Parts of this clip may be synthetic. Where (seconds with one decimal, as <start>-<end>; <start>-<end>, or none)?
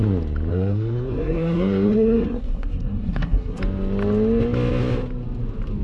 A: 0.5-3.6